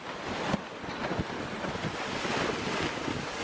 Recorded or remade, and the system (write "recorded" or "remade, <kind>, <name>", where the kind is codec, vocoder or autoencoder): recorded